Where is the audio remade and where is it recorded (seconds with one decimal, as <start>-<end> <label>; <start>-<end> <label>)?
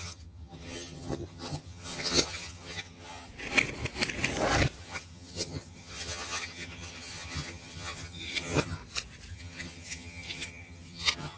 0.0-3.3 remade; 3.3-4.8 recorded; 4.8-8.8 remade; 8.8-9.3 recorded; 9.3-11.4 remade